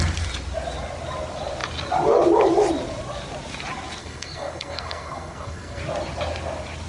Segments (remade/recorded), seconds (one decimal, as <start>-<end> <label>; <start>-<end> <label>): 0.0-4.0 recorded; 4.0-5.8 remade; 5.8-6.9 recorded